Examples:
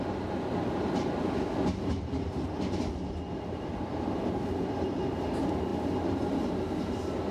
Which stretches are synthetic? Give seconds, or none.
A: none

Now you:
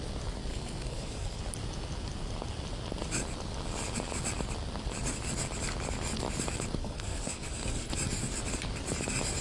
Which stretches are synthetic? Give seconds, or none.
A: 0.5-1.4 (codec, SNAC); 6.8-7.9

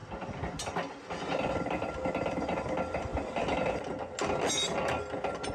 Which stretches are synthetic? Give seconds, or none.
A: none

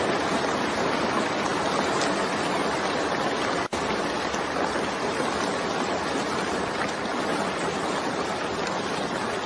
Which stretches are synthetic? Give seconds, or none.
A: none

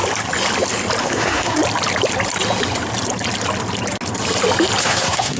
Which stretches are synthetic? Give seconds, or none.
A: 1.0-1.6 (codec, SNAC); 4.8-5.4

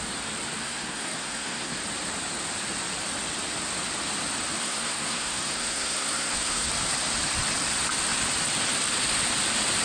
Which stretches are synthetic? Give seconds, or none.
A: 0.6-1.8 (codec, SNAC); 4.6-6.7

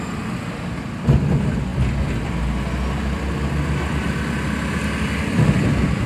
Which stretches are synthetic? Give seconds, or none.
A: none